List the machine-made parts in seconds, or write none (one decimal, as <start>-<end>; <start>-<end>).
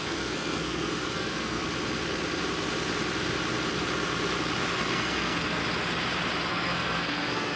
0.0-1.6; 4.7-5.6; 6.5-7.6